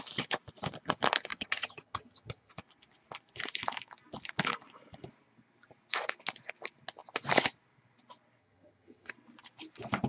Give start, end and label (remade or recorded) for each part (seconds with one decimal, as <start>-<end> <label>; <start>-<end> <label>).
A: 0.0-1.3 recorded; 1.3-2.5 remade; 2.5-8.4 recorded; 8.4-9.1 remade; 9.1-10.1 recorded

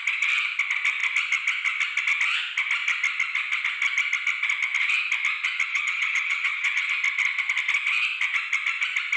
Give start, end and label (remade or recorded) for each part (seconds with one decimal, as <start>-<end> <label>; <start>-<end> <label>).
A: 0.0-5.7 recorded; 5.7-6.9 remade; 6.9-9.2 recorded

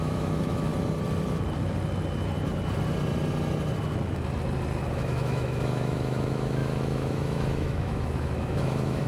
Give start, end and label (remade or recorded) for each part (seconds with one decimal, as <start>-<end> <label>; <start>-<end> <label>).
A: 0.0-0.7 remade; 0.7-4.9 recorded; 4.9-9.1 remade